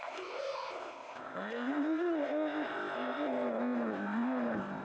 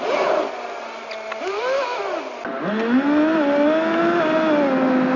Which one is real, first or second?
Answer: second